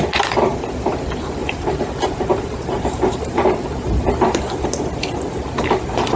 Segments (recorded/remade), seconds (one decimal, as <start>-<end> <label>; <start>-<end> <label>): 0.0-1.4 recorded; 1.4-4.1 remade; 4.1-6.2 recorded